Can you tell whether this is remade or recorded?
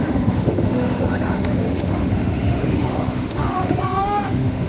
remade